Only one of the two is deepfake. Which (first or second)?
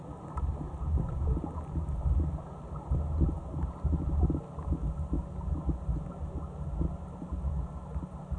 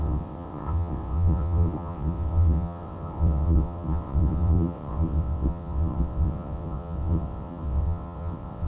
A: second